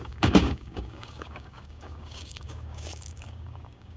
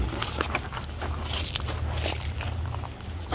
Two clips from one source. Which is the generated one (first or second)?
first